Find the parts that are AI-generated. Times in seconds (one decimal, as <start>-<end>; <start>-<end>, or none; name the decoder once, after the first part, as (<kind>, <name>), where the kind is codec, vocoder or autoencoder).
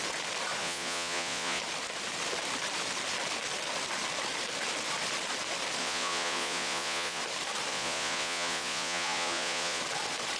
0.6-1.6 (vocoder, Vocos); 5.8-7.2; 7.7-9.8